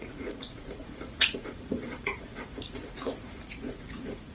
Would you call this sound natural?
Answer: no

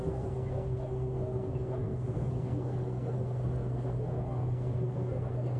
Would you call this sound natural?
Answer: no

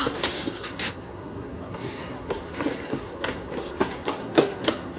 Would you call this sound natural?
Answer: no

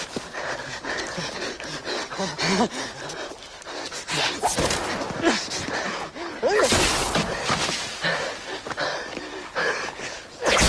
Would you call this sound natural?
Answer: yes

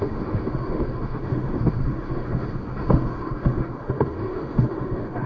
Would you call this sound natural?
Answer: no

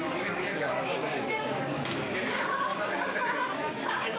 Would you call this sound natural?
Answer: no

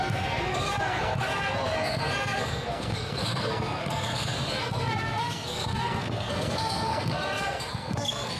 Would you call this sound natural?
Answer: no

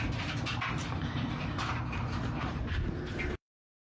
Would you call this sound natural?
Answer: yes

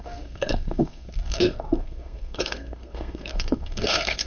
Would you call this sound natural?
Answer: no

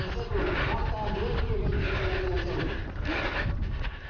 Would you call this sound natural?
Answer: yes